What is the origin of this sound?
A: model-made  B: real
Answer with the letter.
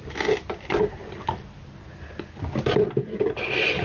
B